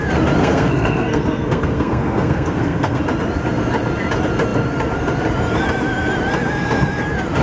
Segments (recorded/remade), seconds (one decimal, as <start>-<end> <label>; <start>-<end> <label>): 0.0-0.4 recorded; 0.4-3.0 remade; 3.0-7.4 recorded